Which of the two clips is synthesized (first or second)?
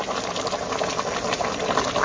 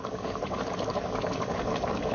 second